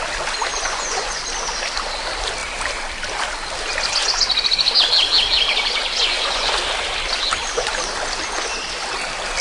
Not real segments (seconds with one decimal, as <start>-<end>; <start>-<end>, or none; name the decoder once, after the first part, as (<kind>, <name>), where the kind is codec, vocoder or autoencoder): 0.5-1.2 (vocoder, Vocos); 5.8-6.5